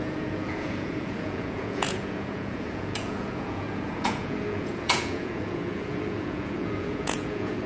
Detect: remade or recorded remade